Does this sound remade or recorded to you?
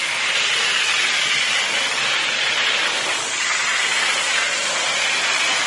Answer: recorded